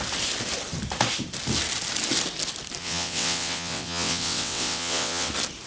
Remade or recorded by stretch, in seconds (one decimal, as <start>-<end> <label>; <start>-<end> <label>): 0.0-2.8 recorded; 2.8-5.3 remade; 5.3-5.7 recorded